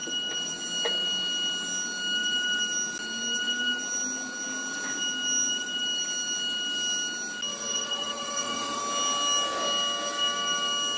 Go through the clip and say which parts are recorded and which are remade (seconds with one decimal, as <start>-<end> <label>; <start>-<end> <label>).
0.0-7.5 recorded; 7.5-8.8 remade; 8.8-11.0 recorded